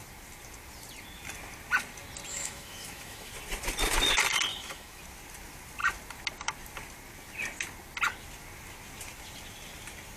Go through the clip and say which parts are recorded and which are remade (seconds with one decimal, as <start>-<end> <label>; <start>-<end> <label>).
0.0-2.3 recorded; 2.3-3.3 remade; 3.3-4.5 recorded; 4.5-5.0 remade; 5.0-10.2 recorded